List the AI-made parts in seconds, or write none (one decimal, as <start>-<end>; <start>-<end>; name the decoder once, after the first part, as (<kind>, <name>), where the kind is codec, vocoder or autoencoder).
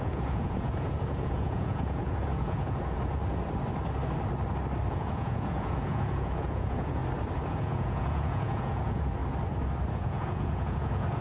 0.0-3.2 (vocoder, Vocos); 4.9-7.0; 7.5-9.2; 9.9-11.2